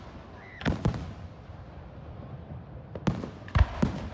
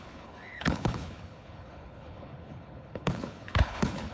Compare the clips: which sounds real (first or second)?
first